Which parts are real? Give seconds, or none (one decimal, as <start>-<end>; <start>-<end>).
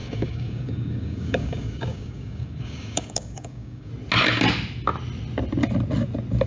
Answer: 3.9-6.5